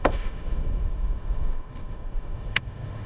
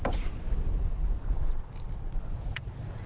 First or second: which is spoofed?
first